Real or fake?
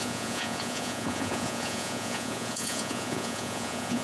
fake